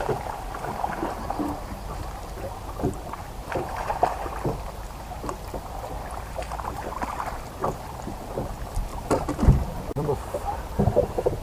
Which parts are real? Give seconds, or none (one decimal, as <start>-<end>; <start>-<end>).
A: 0.0-7.6; 8.2-8.9; 10.8-11.4

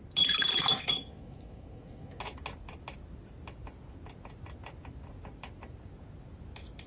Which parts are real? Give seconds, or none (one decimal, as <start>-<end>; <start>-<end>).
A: 0.0-0.5; 2.2-6.9

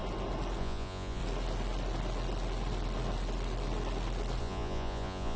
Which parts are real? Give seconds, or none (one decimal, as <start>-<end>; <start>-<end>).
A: 0.0-0.6; 1.2-4.4